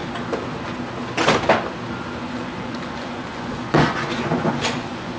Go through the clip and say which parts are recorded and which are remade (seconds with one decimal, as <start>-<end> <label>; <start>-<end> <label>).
0.0-2.2 recorded; 2.2-5.2 remade